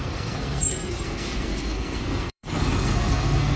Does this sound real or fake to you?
fake